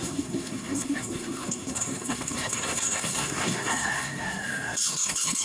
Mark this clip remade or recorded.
remade